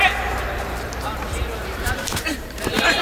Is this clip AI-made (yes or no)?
yes